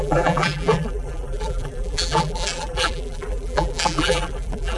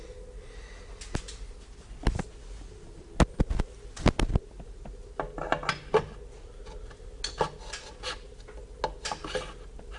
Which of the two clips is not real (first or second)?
first